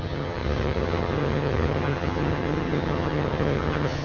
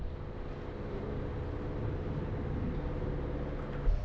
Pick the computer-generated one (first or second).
first